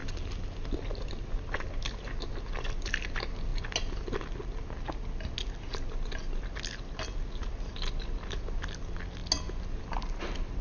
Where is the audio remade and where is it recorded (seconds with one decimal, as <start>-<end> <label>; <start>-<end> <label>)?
0.0-10.6 recorded

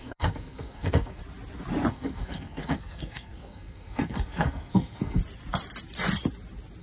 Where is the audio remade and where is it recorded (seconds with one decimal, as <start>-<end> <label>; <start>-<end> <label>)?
0.0-1.2 remade; 1.2-1.9 recorded; 1.9-5.2 remade; 5.2-6.8 recorded

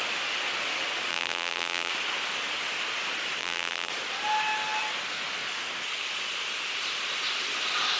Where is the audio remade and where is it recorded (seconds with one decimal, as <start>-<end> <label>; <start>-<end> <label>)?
0.0-1.1 recorded; 1.1-1.9 remade; 1.9-3.4 recorded; 3.4-3.9 remade; 3.9-8.0 recorded